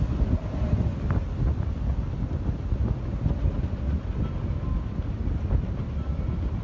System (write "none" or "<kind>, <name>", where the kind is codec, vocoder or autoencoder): none